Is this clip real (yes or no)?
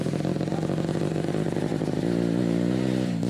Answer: yes